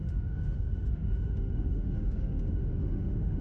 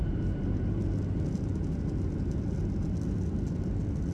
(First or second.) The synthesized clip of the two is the first